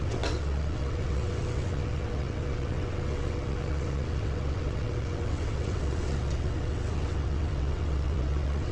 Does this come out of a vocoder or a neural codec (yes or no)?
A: yes